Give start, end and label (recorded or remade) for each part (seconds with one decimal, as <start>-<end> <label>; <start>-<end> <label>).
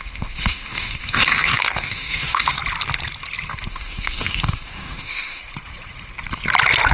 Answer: 0.0-2.6 remade; 2.6-3.7 recorded; 3.7-5.4 remade; 5.4-6.9 recorded